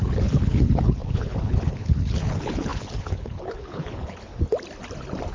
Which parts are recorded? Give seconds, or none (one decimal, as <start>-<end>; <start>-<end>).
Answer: 4.3-5.3